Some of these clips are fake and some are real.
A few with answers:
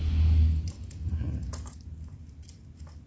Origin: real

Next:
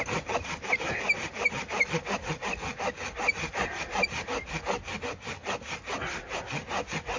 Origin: real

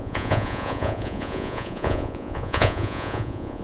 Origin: fake